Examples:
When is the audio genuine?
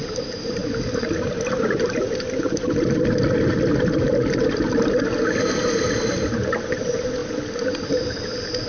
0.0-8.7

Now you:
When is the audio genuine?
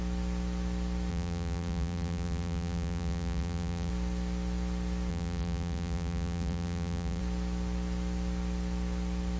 0.0-1.1; 3.9-5.1; 7.2-9.4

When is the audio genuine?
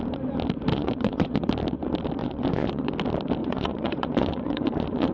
0.0-0.7; 1.5-2.2; 2.9-3.4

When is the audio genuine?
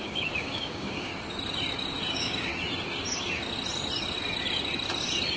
1.1-2.1; 2.5-5.4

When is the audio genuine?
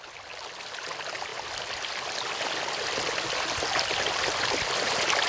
0.0-5.3